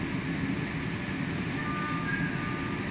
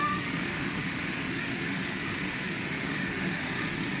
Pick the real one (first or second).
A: first